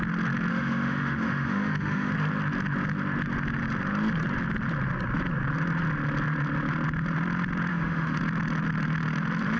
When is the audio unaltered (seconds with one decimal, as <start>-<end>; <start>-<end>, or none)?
0.0-0.5; 2.1-7.7; 8.2-9.6